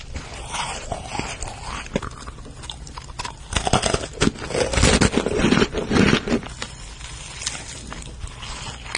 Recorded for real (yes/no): yes